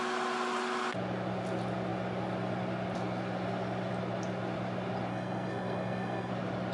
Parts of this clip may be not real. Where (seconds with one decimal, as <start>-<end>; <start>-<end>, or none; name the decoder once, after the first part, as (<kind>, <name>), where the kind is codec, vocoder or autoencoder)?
5.1-6.3 (codec, SNAC)